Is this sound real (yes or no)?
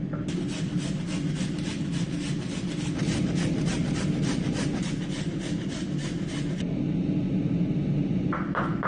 yes